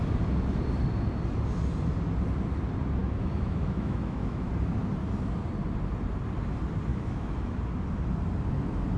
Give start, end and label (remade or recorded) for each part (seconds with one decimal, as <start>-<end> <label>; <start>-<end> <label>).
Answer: 0.0-3.0 recorded; 3.0-4.5 remade; 4.5-6.9 recorded; 6.9-7.7 remade; 7.7-9.0 recorded